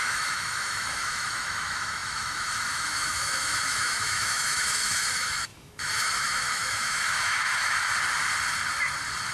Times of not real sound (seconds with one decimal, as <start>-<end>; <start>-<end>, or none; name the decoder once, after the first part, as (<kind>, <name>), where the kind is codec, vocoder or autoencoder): 0.0-7.9 (autoencoder, DAC-VAE)